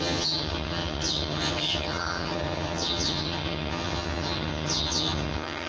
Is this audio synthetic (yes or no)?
yes